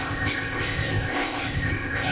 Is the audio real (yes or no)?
no